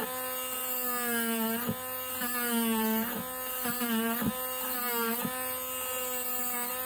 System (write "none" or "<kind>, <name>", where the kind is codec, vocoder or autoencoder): none